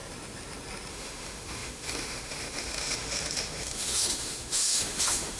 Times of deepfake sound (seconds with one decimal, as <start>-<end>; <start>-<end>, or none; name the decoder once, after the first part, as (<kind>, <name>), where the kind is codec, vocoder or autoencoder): 0.9-5.4 (autoencoder, DAC-VAE)